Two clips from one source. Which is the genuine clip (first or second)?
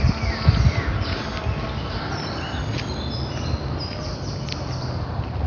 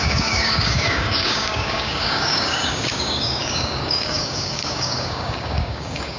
first